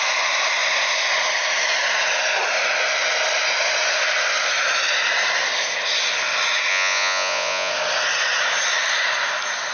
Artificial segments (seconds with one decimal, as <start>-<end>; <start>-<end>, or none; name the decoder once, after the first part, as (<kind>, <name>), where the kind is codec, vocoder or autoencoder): 6.7-7.7 (vocoder, Vocos)